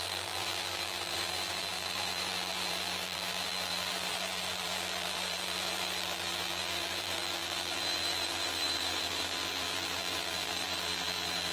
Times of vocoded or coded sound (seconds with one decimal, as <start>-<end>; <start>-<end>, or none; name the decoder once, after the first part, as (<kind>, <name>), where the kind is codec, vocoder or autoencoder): 0.0-11.5 (vocoder, BigVGAN v2)